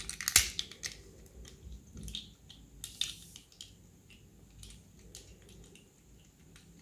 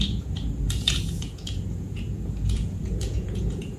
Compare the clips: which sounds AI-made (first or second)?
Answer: second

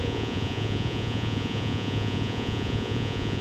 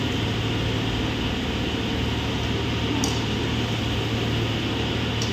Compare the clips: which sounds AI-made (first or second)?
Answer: first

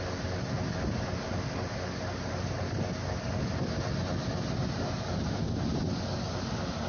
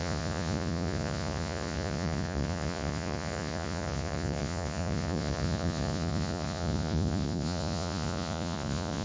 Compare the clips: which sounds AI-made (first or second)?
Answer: second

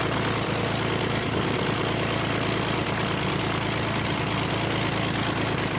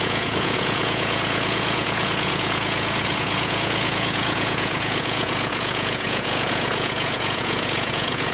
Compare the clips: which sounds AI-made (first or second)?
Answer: second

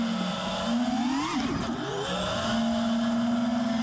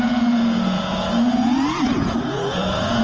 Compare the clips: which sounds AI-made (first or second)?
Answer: second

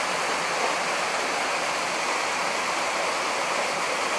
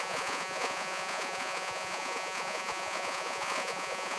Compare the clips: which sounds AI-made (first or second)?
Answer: second